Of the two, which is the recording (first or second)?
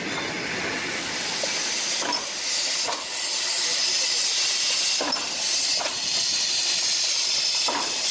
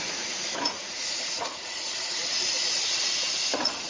first